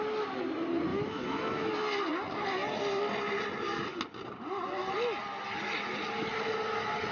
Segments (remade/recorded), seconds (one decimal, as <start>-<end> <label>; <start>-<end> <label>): 0.0-0.9 recorded; 0.9-1.7 remade; 1.7-7.1 recorded